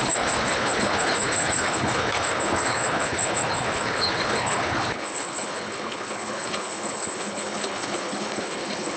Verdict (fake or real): fake